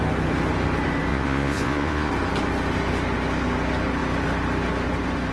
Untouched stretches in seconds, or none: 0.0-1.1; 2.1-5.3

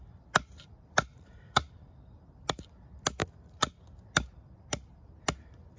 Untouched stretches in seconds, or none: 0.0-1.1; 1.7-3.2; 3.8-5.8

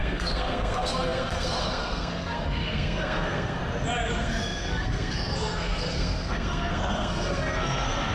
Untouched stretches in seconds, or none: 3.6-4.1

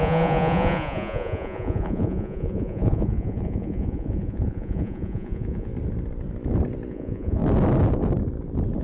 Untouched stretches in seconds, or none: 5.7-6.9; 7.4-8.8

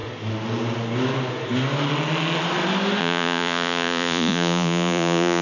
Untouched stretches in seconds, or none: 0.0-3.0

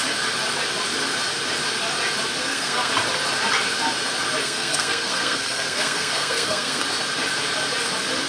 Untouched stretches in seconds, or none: 0.0-2.4; 2.9-4.4; 6.8-8.3

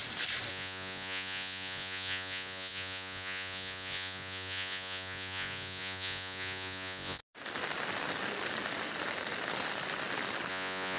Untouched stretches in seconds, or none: 0.0-0.5; 7.2-10.5